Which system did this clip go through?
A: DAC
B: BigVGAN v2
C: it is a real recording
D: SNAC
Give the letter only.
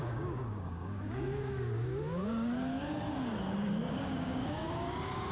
A